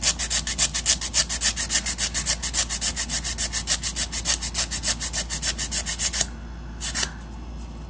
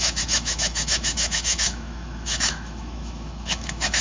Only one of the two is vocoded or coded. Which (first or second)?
second